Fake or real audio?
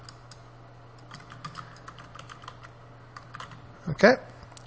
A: real